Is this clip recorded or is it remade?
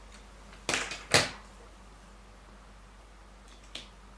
recorded